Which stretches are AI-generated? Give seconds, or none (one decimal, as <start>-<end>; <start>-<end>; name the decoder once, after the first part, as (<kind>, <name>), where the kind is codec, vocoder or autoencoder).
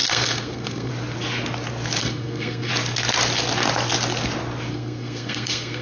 0.0-0.9 (codec, SNAC); 2.0-2.7; 4.7-5.8